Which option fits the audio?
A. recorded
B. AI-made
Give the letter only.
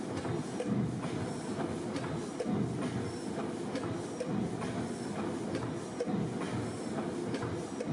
A